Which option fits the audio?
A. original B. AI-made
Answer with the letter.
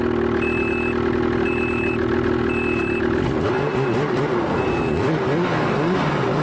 B